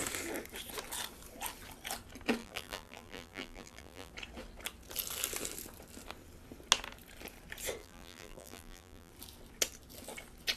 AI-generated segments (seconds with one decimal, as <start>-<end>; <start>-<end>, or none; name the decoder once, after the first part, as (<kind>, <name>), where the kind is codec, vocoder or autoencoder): 2.4-4.1 (vocoder, BigVGAN v2); 7.8-9.1